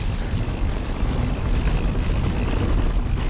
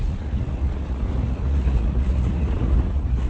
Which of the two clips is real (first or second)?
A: first